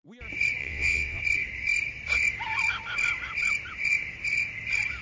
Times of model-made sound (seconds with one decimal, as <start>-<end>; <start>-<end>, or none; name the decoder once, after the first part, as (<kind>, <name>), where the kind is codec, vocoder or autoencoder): 0.6-1.2 (vocoder, WaveNeXt)